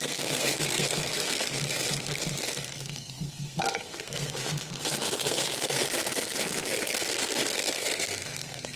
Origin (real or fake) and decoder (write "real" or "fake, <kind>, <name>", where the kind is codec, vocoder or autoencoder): fake, codec, SNAC